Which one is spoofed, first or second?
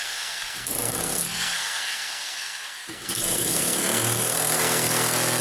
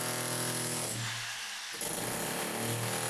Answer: first